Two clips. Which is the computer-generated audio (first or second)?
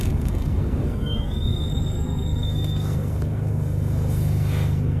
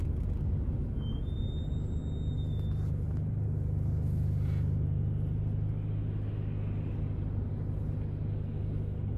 first